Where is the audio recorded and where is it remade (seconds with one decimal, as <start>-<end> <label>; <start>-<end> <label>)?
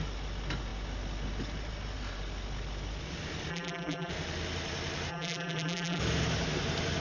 0.0-3.5 recorded; 3.5-4.1 remade; 4.1-5.1 recorded; 5.1-6.0 remade; 6.0-7.0 recorded